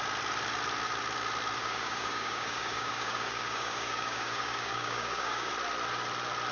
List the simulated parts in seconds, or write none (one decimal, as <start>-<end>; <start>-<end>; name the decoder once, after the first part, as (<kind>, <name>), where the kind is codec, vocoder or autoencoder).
1.6-5.5 (codec, DAC)